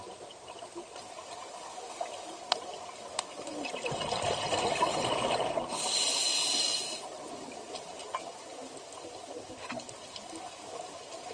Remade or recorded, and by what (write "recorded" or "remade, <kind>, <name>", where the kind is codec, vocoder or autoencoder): recorded